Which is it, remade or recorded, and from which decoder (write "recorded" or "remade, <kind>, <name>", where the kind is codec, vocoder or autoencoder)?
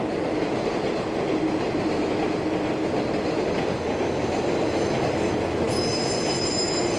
remade, vocoder, BigVGAN v2